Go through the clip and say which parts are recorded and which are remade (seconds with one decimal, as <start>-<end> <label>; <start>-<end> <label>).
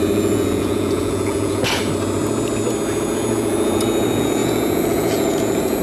0.0-1.8 remade; 1.8-3.0 recorded; 3.0-5.8 remade